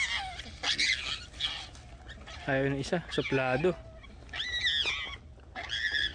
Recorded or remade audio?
recorded